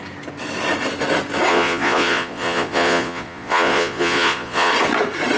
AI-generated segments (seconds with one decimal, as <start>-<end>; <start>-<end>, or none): 1.5-4.7